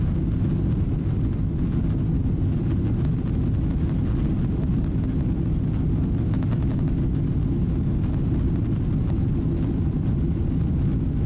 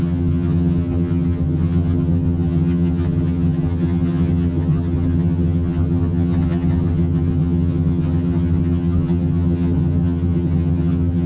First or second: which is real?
first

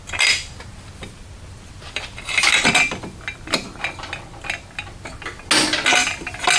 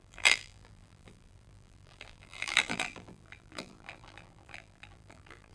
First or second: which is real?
first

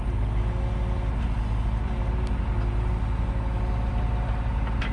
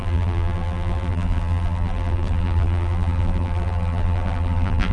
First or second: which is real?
first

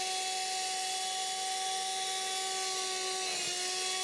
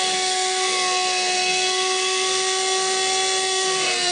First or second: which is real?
first